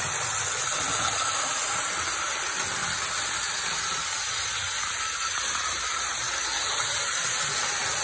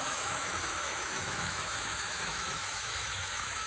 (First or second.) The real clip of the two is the first